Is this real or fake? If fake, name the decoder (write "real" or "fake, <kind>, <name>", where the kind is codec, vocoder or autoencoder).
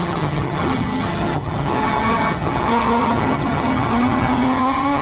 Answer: fake, vocoder, HiFi-GAN